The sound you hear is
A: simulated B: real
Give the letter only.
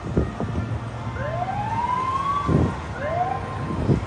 B